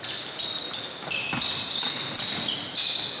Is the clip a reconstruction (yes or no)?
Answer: no